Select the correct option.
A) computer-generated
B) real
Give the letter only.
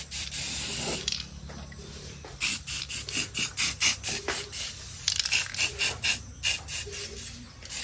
B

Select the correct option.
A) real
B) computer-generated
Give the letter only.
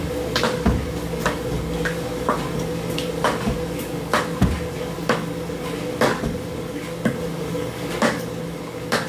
B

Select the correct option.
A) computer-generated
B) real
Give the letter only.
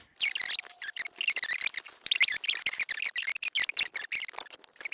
B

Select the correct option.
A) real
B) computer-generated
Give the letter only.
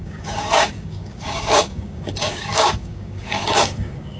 B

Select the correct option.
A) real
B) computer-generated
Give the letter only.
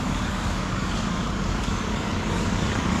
B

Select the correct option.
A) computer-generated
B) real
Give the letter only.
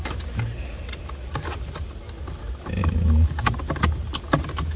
B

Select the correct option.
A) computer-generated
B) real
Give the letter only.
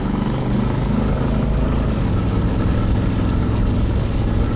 A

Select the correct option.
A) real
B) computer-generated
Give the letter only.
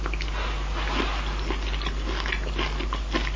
A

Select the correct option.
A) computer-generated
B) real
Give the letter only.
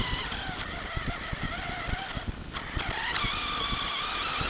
B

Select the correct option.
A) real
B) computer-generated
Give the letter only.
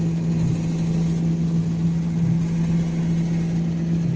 A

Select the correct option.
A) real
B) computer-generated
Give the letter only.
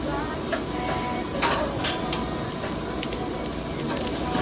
A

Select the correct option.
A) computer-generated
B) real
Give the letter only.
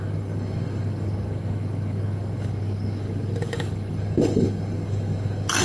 A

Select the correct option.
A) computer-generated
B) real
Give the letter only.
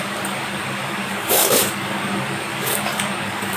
A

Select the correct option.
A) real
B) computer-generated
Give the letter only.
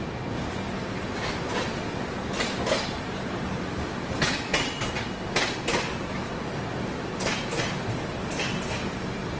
A